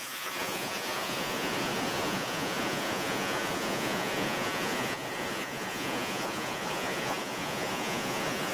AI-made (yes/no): yes